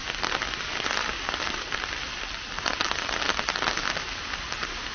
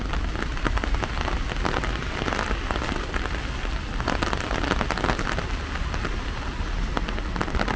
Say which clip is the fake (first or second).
first